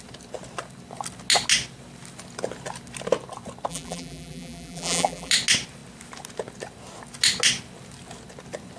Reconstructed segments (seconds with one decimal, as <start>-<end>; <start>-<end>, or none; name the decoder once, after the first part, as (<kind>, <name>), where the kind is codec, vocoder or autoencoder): 3.7-5.3 (vocoder, BigVGAN v2)